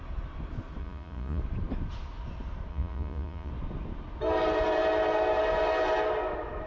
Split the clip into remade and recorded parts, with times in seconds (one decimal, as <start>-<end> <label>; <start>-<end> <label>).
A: 0.0-0.8 recorded; 0.8-1.4 remade; 1.4-2.7 recorded; 2.7-3.5 remade; 3.5-6.7 recorded